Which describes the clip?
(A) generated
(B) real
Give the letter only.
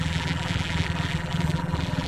A